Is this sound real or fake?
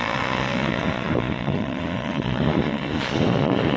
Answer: fake